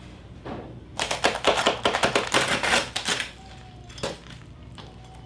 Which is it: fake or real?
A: real